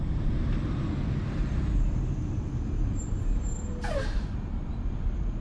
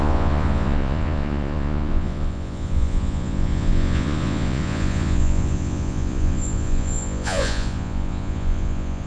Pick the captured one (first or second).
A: first